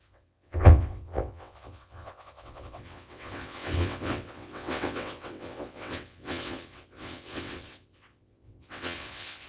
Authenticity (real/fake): fake